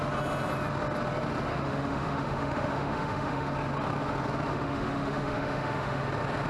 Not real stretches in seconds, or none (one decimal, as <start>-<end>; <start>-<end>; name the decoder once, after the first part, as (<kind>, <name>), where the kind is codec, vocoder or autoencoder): 1.5-3.5 (autoencoder, DAC-VAE); 4.5-6.0